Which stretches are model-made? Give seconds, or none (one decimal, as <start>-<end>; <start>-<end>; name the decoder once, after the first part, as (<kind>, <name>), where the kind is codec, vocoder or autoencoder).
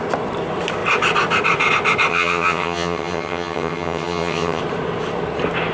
2.1-4.6 (vocoder, HiFi-GAN)